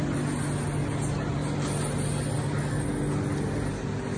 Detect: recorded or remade recorded